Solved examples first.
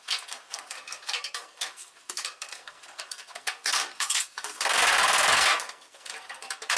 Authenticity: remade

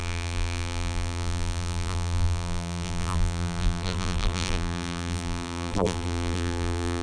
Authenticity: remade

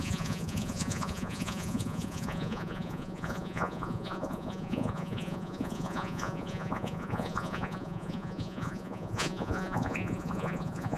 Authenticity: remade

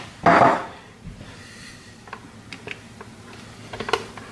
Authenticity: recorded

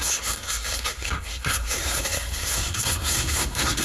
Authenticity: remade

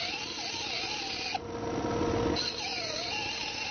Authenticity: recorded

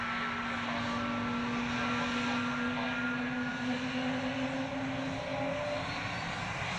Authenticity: recorded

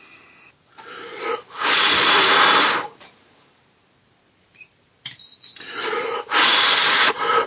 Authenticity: remade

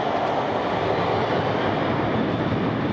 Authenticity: recorded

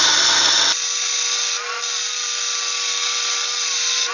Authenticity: recorded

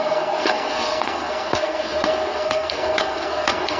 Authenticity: remade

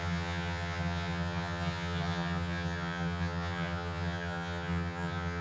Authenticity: remade